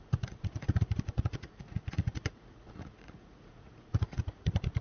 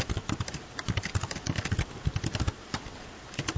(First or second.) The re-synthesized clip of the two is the first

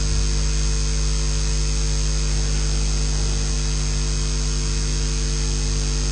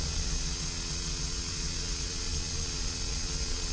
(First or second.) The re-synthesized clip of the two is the second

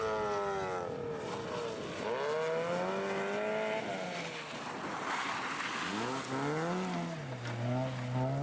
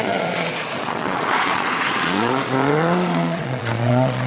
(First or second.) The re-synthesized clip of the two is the second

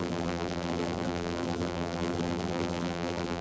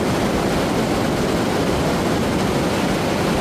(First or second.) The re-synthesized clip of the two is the first